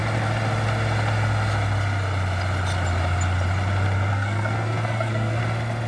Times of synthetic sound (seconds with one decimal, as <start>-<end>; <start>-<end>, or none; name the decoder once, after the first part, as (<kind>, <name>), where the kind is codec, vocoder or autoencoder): 4.1-5.4 (codec, SNAC)